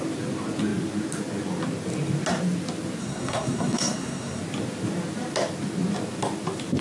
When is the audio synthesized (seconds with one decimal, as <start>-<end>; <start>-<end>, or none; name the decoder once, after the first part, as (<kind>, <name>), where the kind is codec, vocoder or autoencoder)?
3.0-4.4 (codec, SNAC)